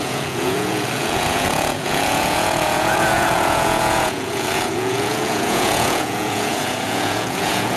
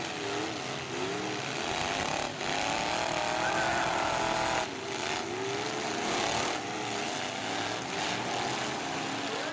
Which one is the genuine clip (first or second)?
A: second